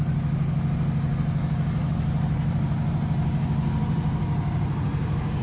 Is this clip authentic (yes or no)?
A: yes